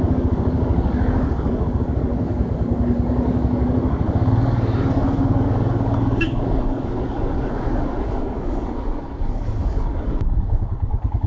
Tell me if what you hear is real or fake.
fake